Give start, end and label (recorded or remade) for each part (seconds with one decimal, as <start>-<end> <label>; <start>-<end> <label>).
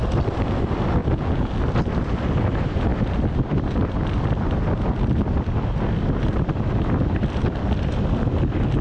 0.0-1.0 recorded; 1.0-1.5 remade; 1.5-8.8 recorded